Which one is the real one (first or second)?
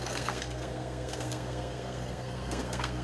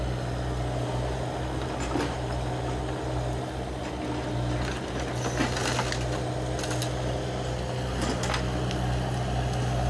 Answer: second